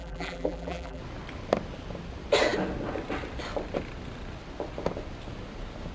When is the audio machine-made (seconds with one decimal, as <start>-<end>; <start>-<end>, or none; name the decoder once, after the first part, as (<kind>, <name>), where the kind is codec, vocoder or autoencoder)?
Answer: 0.0-1.0 (vocoder, BigVGAN v2)